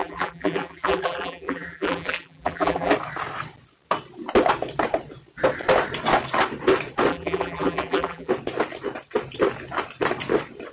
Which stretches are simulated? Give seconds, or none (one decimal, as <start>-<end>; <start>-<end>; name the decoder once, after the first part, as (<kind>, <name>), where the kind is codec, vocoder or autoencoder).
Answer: 0.0-2.9 (vocoder, BigVGAN v2); 7.1-8.3

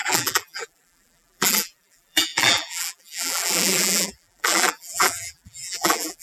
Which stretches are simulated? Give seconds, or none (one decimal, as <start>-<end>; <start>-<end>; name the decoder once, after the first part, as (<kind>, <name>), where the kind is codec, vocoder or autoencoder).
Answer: 0.0-6.2 (vocoder, BigVGAN v2)

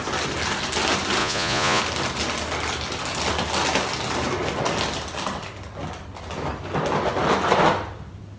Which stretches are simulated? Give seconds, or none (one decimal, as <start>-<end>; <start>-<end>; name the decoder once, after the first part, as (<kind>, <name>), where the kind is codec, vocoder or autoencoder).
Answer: 1.2-1.8 (vocoder, Vocos)

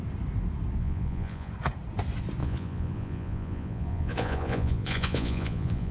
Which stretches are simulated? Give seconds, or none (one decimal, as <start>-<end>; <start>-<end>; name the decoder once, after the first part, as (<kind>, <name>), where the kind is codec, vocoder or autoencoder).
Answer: 0.8-1.5 (vocoder, Vocos); 2.4-5.9

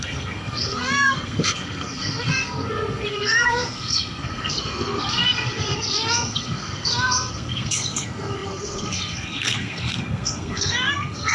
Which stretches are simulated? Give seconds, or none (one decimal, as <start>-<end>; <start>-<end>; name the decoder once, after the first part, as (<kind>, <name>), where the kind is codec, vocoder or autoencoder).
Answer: 0.0-11.3 (codec, SNAC)

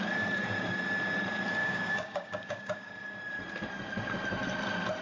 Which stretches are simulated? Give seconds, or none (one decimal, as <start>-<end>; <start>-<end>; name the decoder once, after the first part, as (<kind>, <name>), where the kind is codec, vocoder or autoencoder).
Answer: 1.6-2.9 (codec, DAC)

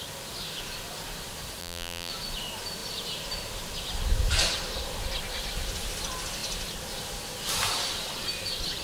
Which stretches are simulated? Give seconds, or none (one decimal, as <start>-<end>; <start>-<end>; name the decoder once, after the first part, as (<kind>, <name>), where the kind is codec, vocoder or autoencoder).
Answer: 1.6-2.1 (vocoder, BigVGAN v2)

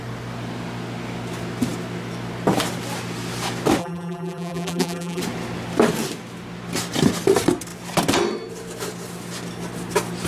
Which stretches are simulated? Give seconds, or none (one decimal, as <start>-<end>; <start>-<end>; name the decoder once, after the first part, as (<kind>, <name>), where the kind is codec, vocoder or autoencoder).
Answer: 3.8-5.2 (vocoder, BigVGAN v2)